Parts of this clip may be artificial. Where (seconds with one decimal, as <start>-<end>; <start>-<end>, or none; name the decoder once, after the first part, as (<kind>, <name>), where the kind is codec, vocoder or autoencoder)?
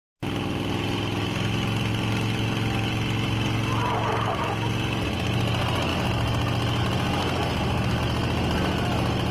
7.2-8.0 (codec, SNAC)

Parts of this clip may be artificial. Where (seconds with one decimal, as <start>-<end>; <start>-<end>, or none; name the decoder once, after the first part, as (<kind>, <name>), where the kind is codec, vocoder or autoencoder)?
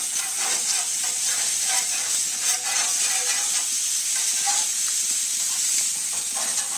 none